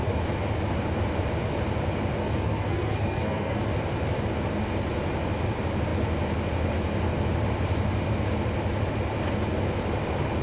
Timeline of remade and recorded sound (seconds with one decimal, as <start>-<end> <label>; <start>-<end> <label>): 0.0-2.2 recorded; 2.2-3.6 remade; 3.6-10.4 recorded